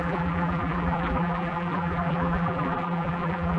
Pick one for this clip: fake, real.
fake